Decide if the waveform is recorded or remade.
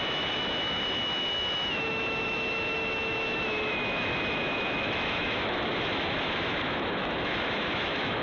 remade